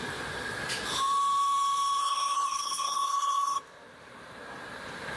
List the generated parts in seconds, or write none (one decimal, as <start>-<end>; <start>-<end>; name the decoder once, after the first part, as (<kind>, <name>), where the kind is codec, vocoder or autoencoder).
2.0-3.6 (codec, SNAC)